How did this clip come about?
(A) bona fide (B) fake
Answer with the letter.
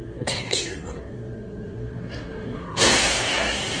B